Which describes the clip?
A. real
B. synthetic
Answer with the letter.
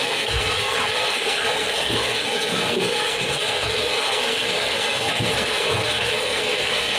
B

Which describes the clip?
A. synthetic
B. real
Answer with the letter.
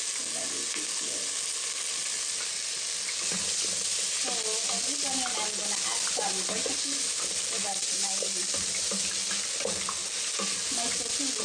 B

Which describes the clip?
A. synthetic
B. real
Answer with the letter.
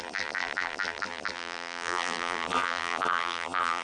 A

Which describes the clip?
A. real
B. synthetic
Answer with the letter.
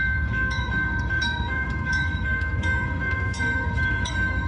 B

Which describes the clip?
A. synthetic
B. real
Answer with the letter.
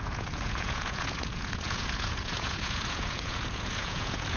A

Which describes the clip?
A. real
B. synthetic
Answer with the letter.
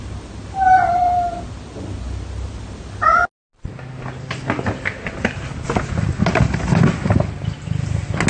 A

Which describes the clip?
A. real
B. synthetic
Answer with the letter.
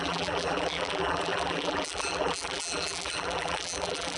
B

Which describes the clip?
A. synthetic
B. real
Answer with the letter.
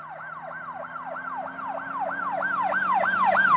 B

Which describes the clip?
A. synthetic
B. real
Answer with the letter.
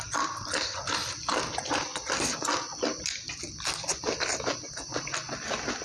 B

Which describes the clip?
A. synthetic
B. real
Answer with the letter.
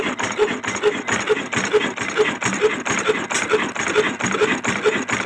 B